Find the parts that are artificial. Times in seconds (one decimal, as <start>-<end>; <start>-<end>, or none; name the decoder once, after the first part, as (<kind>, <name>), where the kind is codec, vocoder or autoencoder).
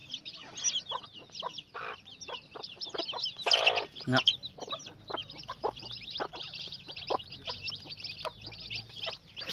0.0-1.3 (vocoder, BigVGAN v2); 5.2-7.2